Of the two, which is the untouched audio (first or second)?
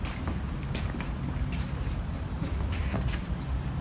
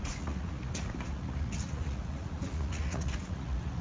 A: first